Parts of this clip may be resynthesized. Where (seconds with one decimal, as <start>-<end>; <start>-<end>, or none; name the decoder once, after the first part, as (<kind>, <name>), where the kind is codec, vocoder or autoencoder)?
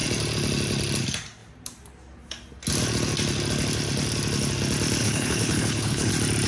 5.0-6.1 (codec, HILCodec)